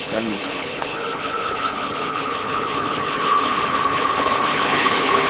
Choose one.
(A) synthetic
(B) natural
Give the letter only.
A